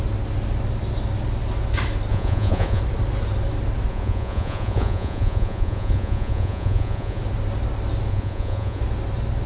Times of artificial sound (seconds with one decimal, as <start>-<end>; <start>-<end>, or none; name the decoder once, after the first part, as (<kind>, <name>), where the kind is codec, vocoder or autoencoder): 2.1-2.8 (vocoder, Vocos); 3.9-7.2; 8.1-8.8